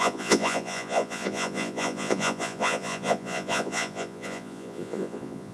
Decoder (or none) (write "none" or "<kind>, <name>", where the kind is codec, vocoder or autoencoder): vocoder, Vocos